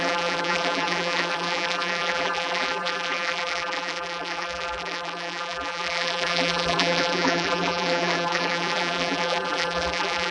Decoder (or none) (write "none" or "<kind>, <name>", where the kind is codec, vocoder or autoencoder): vocoder, BigVGAN v2